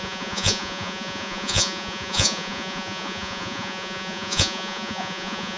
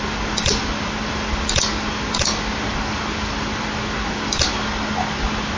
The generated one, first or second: first